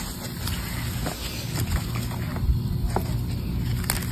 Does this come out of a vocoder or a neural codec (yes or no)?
no